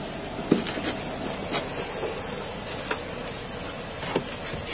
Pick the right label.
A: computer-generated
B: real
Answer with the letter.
B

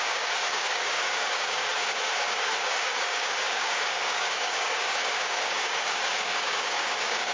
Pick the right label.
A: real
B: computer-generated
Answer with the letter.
B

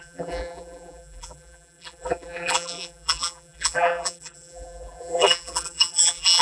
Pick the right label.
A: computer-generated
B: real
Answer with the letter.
A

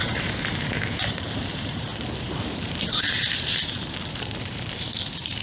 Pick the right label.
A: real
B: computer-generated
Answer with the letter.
B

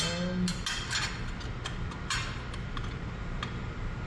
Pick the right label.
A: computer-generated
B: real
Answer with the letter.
B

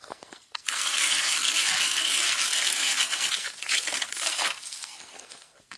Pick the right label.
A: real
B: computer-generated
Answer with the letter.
B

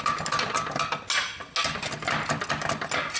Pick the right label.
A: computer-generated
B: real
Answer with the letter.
B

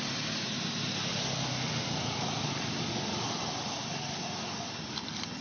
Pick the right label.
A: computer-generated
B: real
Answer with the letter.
B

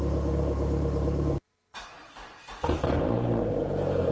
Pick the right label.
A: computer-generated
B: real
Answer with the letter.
A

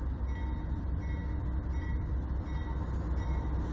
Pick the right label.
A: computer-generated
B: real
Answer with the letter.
B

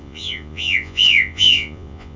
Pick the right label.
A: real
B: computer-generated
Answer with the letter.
B